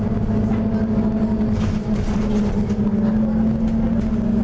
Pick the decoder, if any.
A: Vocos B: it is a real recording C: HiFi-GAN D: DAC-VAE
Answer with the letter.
B